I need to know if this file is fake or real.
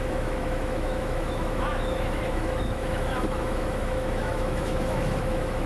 fake